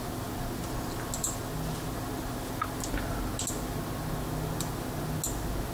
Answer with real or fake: real